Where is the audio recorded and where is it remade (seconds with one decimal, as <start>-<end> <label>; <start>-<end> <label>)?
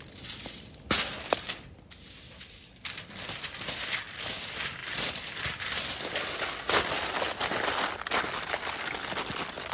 0.0-9.7 recorded